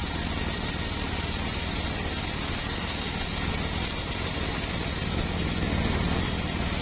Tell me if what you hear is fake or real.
real